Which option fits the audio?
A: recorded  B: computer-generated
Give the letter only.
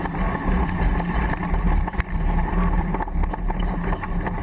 A